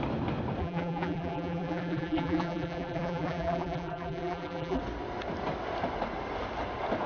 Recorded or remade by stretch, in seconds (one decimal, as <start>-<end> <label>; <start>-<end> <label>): 0.0-0.6 recorded; 0.6-4.8 remade; 4.8-7.1 recorded